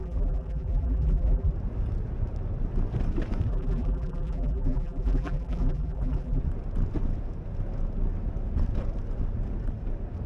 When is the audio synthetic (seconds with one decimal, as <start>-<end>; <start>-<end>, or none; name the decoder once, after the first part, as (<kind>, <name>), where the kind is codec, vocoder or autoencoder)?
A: 0.0-1.5 (vocoder, BigVGAN v2); 3.5-6.4